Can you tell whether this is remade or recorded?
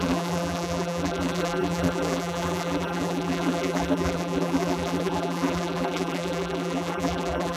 remade